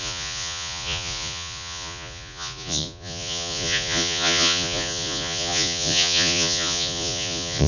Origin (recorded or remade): remade